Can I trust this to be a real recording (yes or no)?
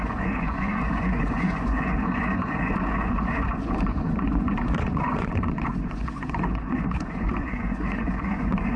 no